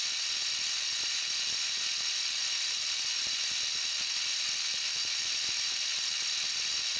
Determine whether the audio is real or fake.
real